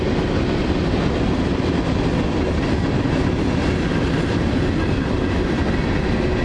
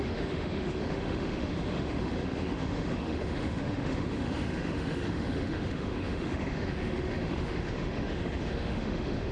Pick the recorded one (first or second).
first